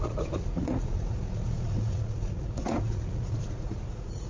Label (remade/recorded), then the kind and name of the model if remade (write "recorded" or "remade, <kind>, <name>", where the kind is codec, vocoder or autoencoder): remade, vocoder, Vocos